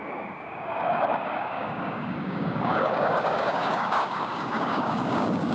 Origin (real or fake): fake